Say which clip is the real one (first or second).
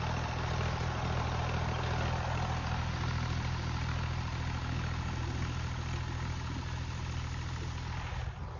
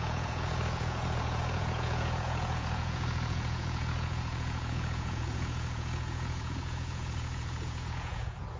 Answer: first